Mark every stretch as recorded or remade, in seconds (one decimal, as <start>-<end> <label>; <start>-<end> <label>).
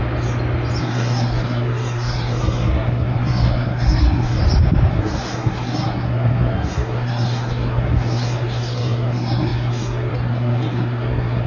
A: 0.0-0.8 recorded; 0.8-4.4 remade; 4.4-4.9 recorded; 4.9-11.5 remade